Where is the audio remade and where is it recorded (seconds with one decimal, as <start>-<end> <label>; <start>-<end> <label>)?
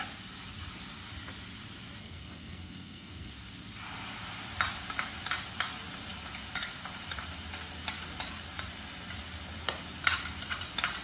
0.0-2.0 recorded; 2.0-3.3 remade; 3.3-11.0 recorded